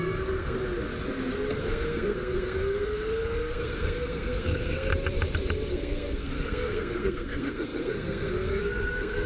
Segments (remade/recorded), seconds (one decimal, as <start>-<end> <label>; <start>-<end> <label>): 0.0-0.6 remade; 0.6-1.6 recorded; 1.6-4.9 remade; 4.9-5.7 recorded; 5.7-9.3 remade